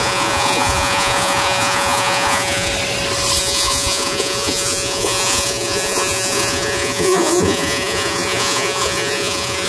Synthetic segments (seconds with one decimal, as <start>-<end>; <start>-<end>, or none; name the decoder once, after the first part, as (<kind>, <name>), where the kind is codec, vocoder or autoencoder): 0.0-2.7 (vocoder, Vocos); 3.4-9.7